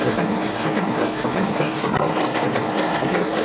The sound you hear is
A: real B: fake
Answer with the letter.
B